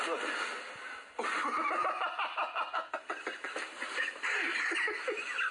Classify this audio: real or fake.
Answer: real